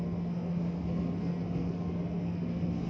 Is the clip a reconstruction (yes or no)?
yes